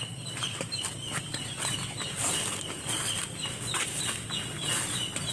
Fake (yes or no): no